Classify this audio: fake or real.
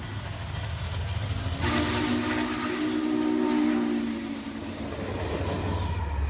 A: real